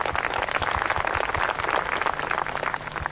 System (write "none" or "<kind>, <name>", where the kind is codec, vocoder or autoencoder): none